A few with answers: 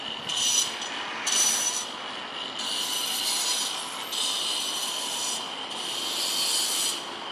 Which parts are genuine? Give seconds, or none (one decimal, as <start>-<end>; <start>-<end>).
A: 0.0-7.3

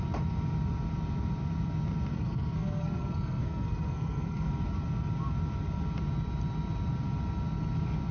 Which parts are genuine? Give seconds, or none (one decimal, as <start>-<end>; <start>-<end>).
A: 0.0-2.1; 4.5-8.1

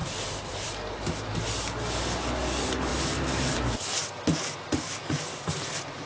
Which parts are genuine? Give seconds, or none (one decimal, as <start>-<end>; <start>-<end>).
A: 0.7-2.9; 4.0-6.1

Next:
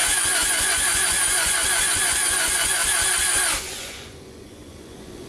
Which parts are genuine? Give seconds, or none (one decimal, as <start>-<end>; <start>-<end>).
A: 2.8-3.6